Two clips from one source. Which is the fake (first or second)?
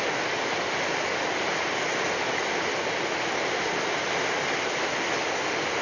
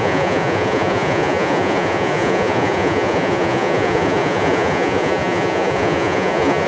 second